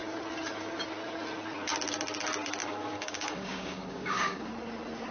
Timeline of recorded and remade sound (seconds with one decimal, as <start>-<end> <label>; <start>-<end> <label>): 0.0-2.6 recorded; 2.6-4.5 remade; 4.5-5.1 recorded